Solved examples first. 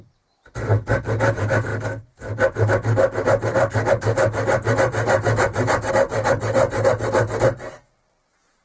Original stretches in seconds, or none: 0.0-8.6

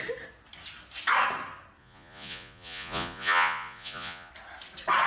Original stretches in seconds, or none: 0.0-1.8; 4.3-5.1